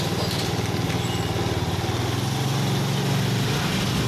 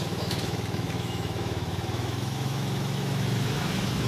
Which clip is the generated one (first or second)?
second